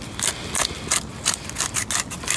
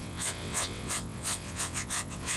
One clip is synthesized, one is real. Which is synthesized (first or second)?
second